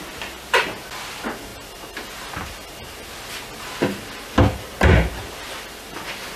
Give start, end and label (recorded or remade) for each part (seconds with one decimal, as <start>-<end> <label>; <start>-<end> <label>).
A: 0.0-6.4 recorded